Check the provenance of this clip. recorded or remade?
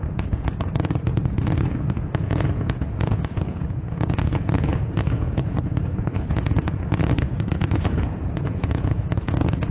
remade